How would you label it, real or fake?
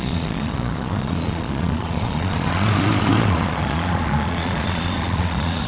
fake